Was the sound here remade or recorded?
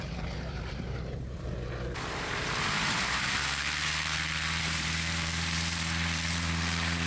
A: remade